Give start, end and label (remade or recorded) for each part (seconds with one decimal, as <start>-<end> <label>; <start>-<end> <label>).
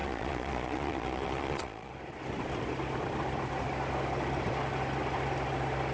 0.0-1.9 remade; 1.9-5.9 recorded